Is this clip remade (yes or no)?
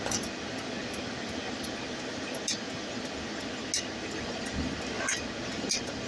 no